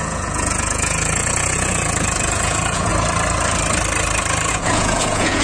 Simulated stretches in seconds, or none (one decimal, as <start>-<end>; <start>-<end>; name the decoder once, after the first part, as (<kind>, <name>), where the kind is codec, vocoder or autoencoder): 0.0-2.9 (vocoder, Vocos); 4.5-5.4